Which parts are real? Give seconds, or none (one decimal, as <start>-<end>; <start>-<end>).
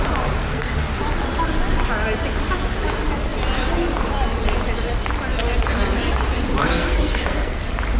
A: 0.0-0.4; 1.0-6.6; 7.6-8.0